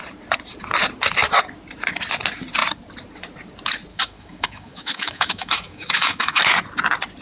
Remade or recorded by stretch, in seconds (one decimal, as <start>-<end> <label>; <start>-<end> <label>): 0.0-3.9 recorded; 3.9-6.4 remade; 6.4-7.2 recorded